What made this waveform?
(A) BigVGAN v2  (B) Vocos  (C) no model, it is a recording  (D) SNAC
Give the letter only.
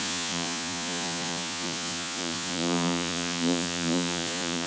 B